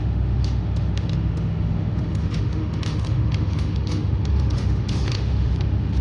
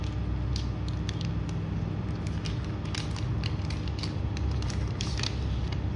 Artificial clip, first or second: first